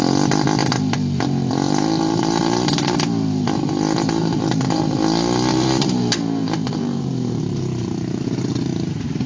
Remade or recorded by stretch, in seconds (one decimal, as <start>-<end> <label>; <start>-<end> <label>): 0.0-0.6 recorded; 0.6-4.8 remade; 4.8-5.5 recorded; 5.5-7.4 remade; 7.4-8.7 recorded; 8.7-9.3 remade